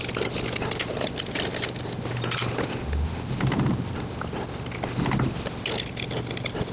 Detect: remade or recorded recorded